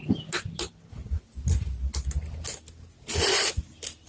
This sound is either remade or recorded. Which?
recorded